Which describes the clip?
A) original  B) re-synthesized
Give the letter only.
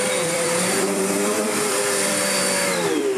B